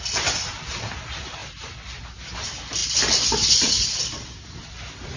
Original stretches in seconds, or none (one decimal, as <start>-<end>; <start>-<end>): 0.0-5.2